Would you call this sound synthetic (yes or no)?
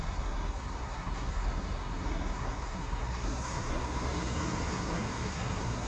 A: yes